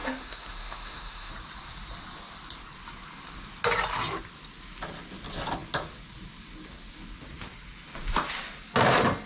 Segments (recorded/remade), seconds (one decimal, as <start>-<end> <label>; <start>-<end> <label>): 0.0-1.3 remade; 1.3-9.3 recorded